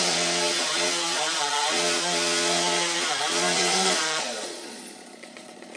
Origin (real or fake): fake